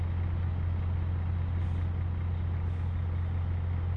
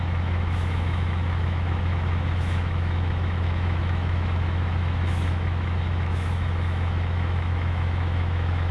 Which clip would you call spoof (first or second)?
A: second